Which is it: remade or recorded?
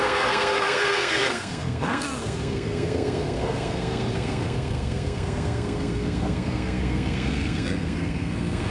remade